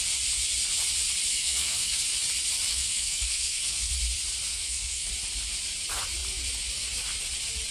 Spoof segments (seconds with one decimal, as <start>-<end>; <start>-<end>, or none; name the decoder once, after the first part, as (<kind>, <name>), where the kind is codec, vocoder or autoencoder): 1.3-2.0 (codec, SNAC); 2.7-3.9; 4.5-5.1